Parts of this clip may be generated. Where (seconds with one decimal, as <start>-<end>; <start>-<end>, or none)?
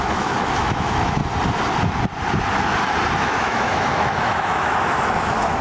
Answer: 0.0-1.2; 3.2-5.6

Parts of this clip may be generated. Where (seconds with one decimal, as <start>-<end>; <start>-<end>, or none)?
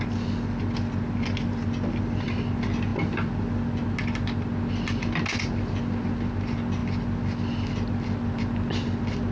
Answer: none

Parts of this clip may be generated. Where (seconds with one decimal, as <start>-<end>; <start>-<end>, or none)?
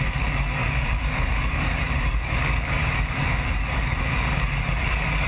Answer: 0.0-5.3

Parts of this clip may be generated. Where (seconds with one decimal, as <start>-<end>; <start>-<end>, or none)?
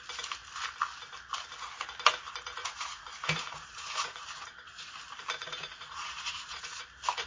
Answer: 2.6-5.0; 5.4-6.8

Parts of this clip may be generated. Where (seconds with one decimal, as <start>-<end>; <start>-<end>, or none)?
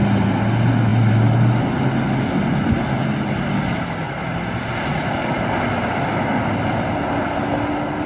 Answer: none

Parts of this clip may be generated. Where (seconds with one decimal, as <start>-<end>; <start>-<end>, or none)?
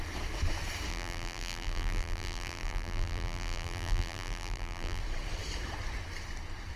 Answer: 0.9-5.0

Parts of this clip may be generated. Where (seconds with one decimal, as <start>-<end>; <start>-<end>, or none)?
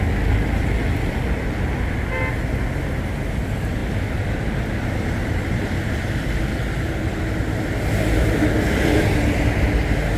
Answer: none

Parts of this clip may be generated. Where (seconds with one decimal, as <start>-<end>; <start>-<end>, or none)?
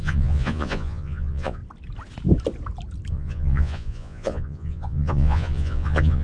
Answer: 0.0-1.6; 3.1-6.2